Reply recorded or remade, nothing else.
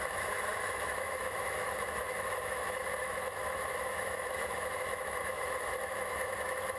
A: remade